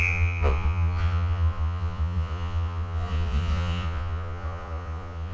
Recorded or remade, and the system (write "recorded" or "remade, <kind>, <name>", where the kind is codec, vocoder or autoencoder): remade, vocoder, Vocos